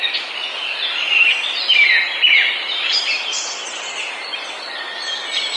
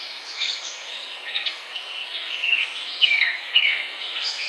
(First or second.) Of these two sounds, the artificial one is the second